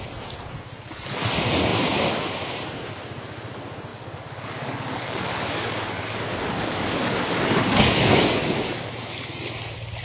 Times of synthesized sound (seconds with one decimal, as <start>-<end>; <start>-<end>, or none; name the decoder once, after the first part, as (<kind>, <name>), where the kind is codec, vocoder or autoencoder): 3.9-8.9 (codec, DAC)